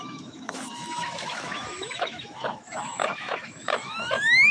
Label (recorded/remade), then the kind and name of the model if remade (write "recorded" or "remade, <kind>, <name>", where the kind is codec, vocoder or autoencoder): remade, autoencoder, DAC-VAE